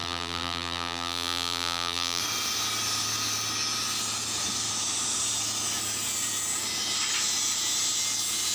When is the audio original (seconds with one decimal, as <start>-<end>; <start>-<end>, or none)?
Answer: 2.2-8.5